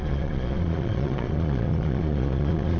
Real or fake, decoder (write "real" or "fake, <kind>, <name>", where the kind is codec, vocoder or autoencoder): fake, vocoder, Vocos